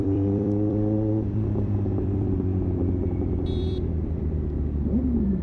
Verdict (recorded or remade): remade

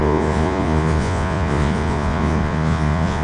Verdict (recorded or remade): remade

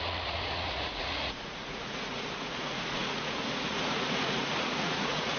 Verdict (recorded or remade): remade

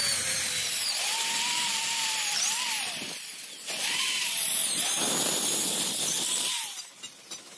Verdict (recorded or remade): remade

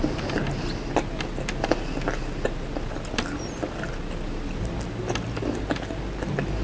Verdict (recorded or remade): recorded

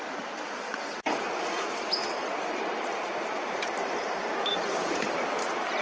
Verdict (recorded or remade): recorded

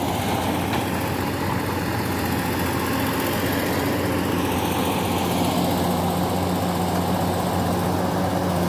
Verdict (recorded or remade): recorded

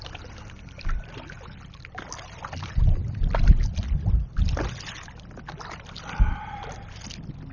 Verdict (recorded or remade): recorded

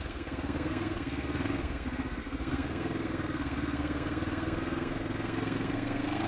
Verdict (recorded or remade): remade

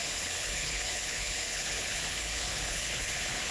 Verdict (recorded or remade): remade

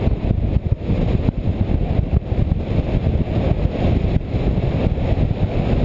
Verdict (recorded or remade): recorded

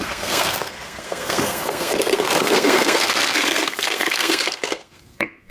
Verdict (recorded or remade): remade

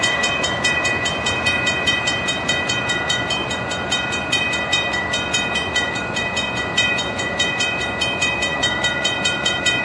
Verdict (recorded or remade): remade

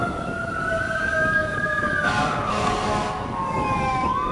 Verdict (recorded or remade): remade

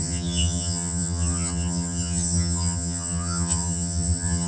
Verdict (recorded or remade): remade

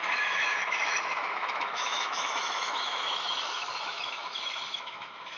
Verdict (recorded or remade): remade